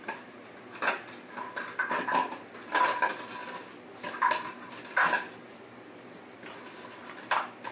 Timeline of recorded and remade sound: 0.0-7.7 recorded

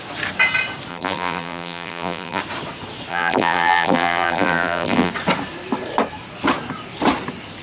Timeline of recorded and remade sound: 0.0-0.9 recorded; 0.9-2.4 remade; 2.4-3.1 recorded; 3.1-5.1 remade; 5.1-7.6 recorded

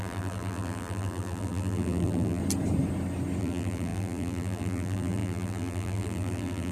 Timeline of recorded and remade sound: 0.0-2.4 remade; 2.4-3.4 recorded; 3.4-6.7 remade

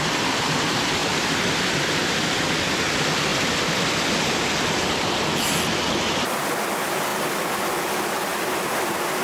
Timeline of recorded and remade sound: 0.0-1.0 recorded; 1.0-2.8 remade; 2.8-3.3 recorded; 3.3-4.1 remade; 4.1-9.2 recorded

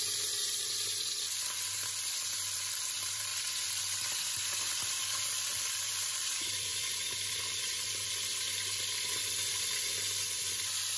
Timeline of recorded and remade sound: 0.0-11.0 remade